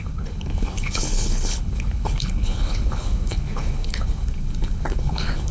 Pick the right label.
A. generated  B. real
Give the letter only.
A